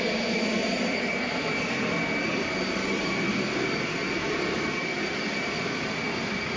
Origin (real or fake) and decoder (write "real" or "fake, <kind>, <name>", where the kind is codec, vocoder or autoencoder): fake, vocoder, BigVGAN v2